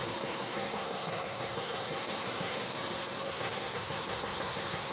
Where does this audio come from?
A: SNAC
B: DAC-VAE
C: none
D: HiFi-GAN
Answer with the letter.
A